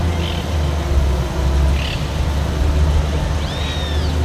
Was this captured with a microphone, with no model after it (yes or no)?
yes